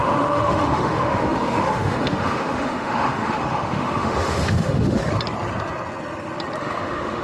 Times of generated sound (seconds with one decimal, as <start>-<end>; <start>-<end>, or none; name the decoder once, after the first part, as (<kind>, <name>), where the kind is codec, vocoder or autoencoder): 0.0-5.0 (autoencoder, DAC-VAE); 6.6-7.2